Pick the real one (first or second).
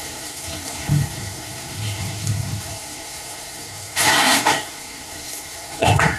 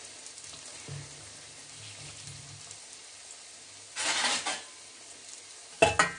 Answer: second